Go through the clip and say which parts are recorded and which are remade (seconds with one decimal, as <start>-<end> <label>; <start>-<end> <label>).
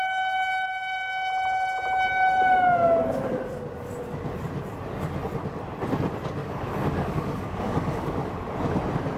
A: 0.0-6.4 recorded; 6.4-8.3 remade; 8.3-9.2 recorded